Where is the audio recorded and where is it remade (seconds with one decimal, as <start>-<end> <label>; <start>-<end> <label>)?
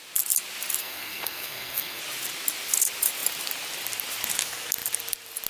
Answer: 0.0-0.8 recorded; 0.8-2.0 remade; 2.0-5.5 recorded